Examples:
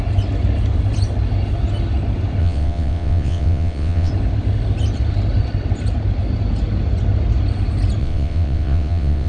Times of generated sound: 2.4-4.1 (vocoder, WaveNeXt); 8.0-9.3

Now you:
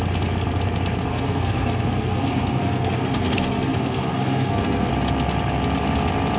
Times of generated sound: 1.1-4.9 (codec, SNAC)

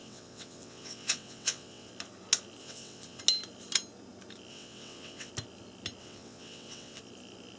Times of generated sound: 0.0-1.9 (vocoder, WaveNeXt); 2.6-3.2; 4.5-5.3; 6.0-7.0

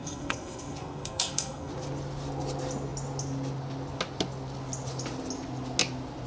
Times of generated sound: 0.0-1.7 (codec, SNAC)